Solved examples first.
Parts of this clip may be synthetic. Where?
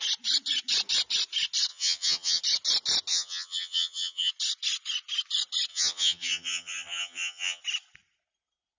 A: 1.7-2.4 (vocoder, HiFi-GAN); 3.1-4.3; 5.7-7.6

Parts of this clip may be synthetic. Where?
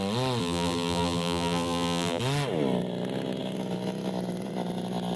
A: 0.4-2.2 (vocoder, BigVGAN v2)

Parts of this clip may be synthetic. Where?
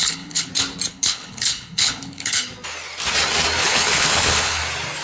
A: 0.0-0.5 (codec, HILCodec); 0.9-2.5; 3.6-4.6